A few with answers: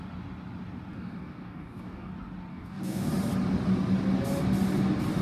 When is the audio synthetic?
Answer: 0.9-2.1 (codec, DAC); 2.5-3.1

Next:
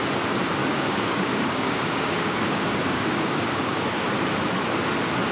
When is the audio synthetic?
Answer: 0.6-3.8 (codec, DAC)

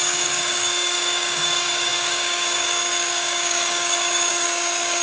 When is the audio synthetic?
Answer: 0.0-5.0 (codec, DAC)

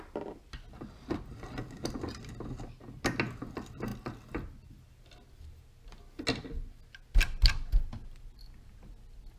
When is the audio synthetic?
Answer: none

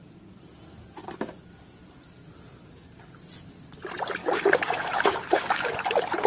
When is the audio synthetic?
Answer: 4.2-5.7 (codec, DAC)